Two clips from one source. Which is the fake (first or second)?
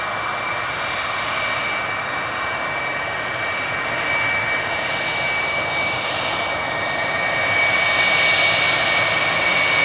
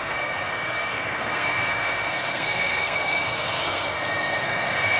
second